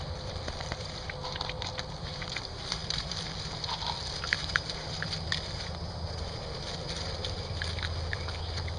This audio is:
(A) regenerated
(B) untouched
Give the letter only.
B